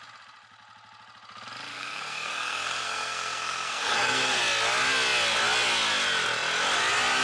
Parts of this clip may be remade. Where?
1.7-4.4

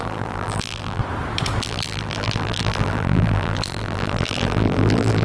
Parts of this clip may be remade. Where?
0.0-1.0; 1.6-5.2

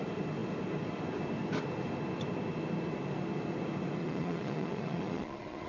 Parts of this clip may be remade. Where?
4.0-5.7

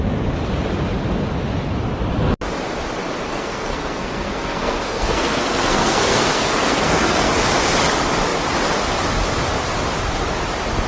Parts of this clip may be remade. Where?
3.3-7.3

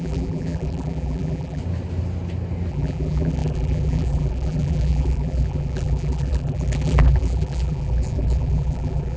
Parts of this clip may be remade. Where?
0.0-1.6; 2.7-9.2

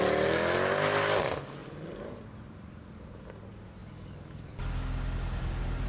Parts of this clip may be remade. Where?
3.8-4.6

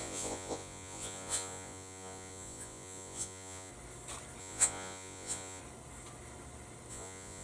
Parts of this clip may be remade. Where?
0.0-3.7; 4.4-5.6; 6.9-7.4